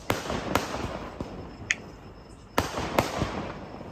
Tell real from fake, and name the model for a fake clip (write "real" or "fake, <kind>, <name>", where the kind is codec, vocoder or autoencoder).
real